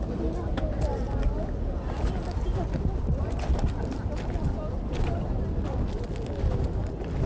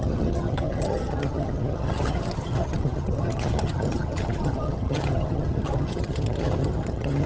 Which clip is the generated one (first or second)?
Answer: second